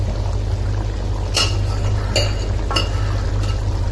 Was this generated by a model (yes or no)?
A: no